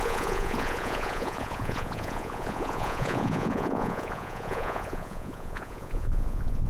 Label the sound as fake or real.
fake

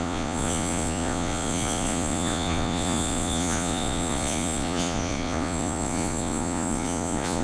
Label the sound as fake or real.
fake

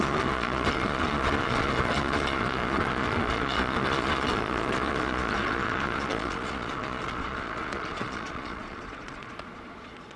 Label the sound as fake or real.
fake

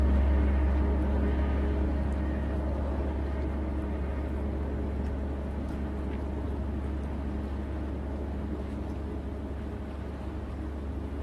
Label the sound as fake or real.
real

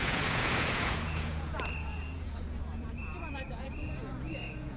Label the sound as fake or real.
fake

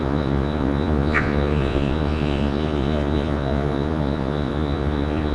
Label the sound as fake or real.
fake